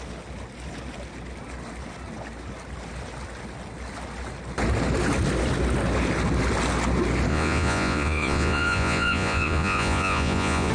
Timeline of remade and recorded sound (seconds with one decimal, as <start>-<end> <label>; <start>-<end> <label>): 0.0-7.3 recorded; 7.3-10.7 remade